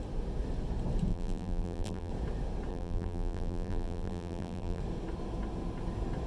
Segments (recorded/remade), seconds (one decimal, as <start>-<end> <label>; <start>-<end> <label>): 0.0-1.1 recorded; 1.1-2.1 remade; 2.1-2.7 recorded; 2.7-4.8 remade; 4.8-6.3 recorded